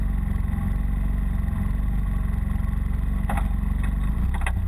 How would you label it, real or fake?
real